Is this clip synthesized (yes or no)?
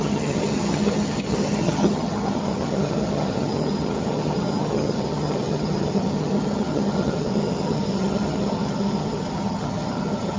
yes